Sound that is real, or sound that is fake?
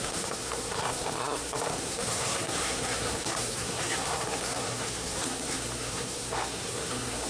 fake